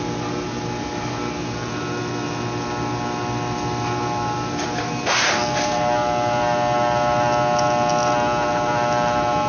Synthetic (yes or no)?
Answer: no